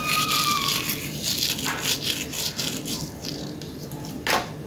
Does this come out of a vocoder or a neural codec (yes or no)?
no